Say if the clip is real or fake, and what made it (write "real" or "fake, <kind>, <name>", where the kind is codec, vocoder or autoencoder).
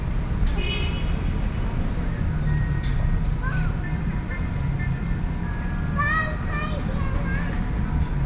real